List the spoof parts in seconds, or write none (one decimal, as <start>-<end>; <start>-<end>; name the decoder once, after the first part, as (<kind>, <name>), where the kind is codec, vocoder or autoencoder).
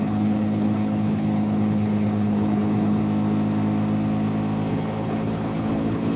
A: 0.0-3.0 (codec, HILCodec); 4.7-6.2